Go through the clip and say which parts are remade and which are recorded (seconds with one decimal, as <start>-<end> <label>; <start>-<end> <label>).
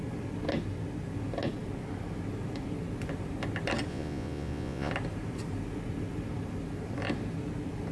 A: 0.0-3.9 recorded; 3.9-4.9 remade; 4.9-7.9 recorded